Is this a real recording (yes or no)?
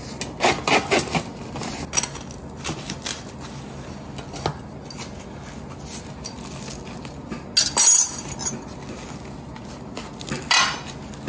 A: yes